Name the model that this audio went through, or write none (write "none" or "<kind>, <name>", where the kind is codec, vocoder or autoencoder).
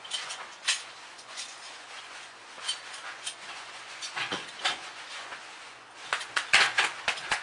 vocoder, Vocos